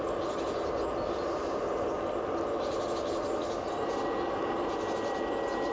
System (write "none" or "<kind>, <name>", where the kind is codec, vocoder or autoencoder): none